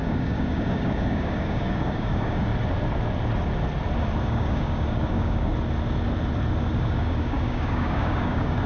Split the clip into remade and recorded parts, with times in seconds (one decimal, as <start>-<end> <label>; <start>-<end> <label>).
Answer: 0.0-2.5 remade; 2.5-4.2 recorded; 4.2-5.5 remade; 5.5-6.7 recorded; 6.7-8.7 remade